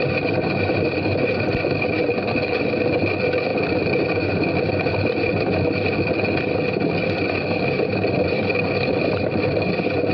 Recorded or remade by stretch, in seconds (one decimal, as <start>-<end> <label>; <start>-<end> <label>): 0.0-10.1 recorded